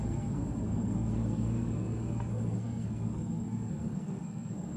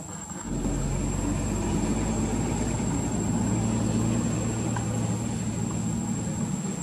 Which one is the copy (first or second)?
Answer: first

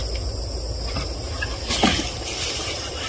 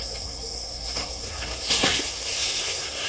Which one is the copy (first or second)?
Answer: second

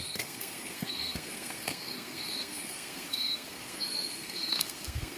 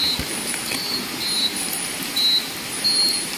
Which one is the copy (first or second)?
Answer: first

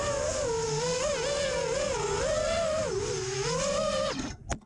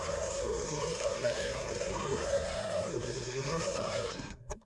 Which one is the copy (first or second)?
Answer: second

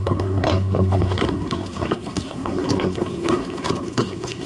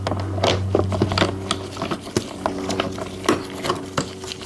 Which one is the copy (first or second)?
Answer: first